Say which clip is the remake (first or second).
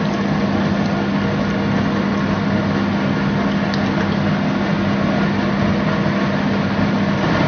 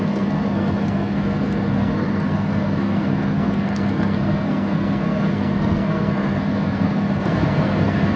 second